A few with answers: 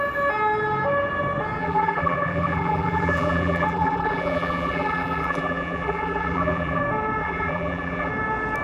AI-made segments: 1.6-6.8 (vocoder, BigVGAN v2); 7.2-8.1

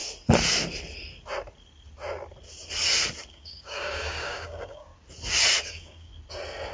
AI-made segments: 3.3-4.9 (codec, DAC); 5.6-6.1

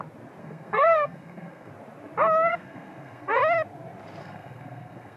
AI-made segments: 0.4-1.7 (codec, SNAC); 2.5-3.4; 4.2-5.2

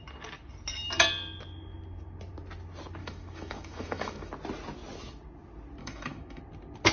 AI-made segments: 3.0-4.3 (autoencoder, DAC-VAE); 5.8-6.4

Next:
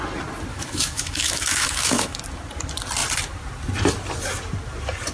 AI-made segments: 0.5-2.2 (autoencoder, DAC-VAE)

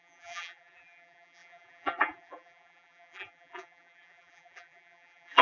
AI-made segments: 0.0-5.4 (vocoder, BigVGAN v2)

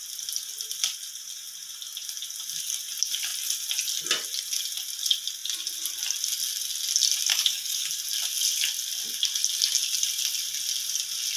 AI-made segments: 7.3-7.9 (codec, DAC)

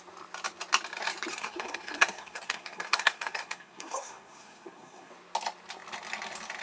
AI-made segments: 1.3-5.1 (codec, SNAC)